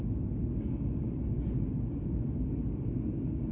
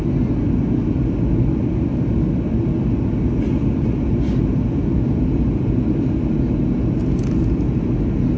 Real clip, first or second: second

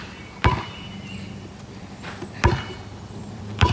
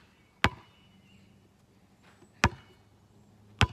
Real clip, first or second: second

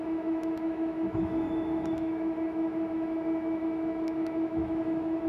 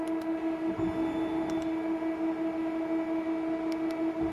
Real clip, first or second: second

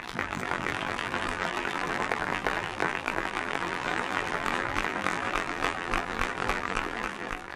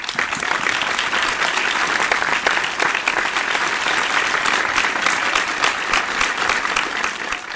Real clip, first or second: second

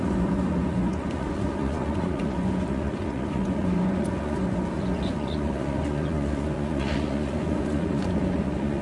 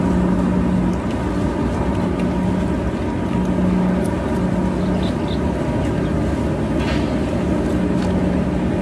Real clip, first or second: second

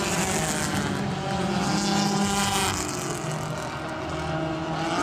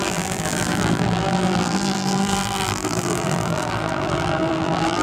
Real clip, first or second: first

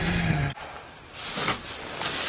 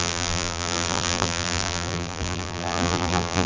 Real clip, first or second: first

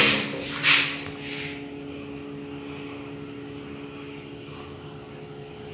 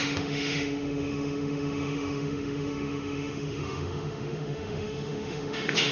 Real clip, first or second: first